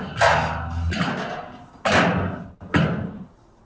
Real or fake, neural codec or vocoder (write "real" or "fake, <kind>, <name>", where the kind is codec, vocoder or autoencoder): real